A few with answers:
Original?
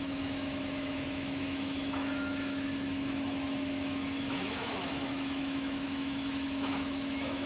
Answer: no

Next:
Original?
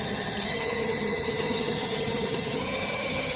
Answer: no